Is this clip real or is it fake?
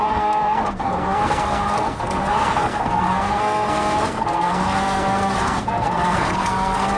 fake